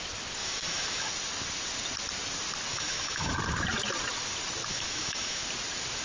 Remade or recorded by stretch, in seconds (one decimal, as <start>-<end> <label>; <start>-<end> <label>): 0.0-0.4 recorded; 0.4-1.1 remade; 1.1-2.7 recorded; 2.7-3.3 remade; 3.3-4.7 recorded; 4.7-5.4 remade; 5.4-6.0 recorded